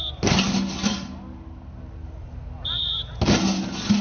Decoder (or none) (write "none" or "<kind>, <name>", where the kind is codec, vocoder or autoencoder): none